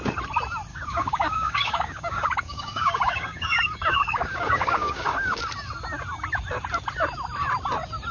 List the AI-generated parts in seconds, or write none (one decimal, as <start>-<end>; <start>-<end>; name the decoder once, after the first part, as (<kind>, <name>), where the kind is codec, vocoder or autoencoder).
0.7-5.4 (codec, DAC)